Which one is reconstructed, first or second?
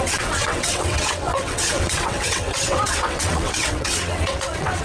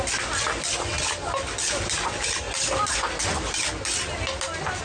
first